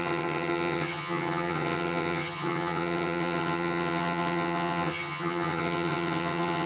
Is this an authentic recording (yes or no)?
no